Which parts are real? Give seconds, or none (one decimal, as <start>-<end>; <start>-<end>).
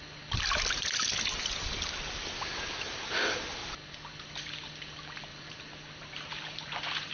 0.0-5.3